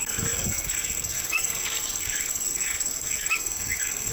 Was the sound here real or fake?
fake